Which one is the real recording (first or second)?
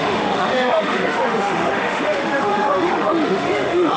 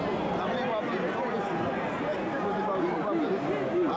second